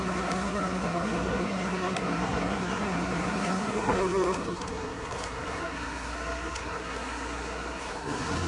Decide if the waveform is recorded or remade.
remade